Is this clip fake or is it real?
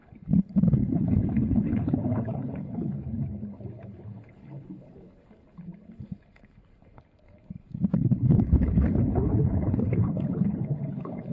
fake